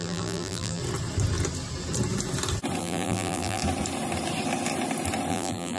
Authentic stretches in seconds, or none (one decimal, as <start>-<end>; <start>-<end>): 0.8-2.8; 3.6-5.3